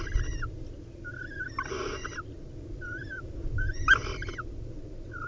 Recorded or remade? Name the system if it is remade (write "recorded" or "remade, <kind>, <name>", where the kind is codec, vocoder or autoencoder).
recorded